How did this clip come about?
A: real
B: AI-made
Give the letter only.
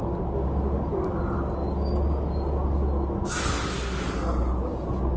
A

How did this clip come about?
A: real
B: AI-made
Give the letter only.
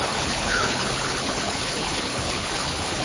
B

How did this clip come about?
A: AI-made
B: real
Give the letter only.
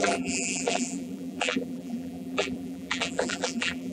A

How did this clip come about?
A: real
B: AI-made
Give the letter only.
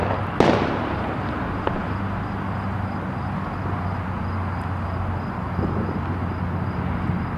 A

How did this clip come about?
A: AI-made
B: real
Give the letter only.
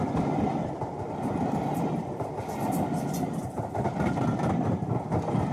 B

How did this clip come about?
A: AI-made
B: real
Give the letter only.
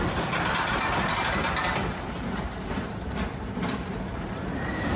A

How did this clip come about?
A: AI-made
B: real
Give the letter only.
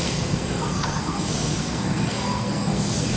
A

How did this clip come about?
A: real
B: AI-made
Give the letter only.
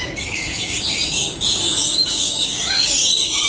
B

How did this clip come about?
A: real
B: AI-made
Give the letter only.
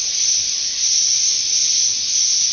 A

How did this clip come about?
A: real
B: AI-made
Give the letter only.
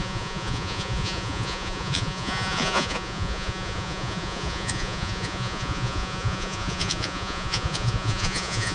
B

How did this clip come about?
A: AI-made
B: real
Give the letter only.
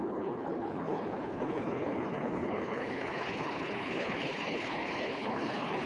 A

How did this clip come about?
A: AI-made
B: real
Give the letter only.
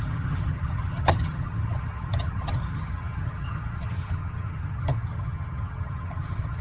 A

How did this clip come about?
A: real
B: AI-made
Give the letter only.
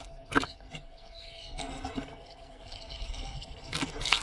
B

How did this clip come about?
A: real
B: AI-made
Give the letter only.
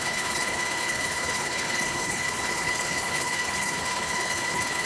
B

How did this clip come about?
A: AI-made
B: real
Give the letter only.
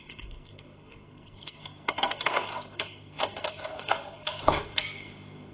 A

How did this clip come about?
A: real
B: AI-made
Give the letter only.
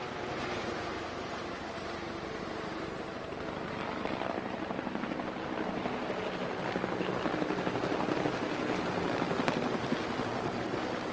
A